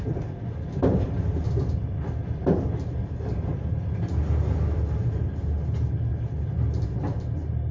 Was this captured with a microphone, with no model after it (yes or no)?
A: yes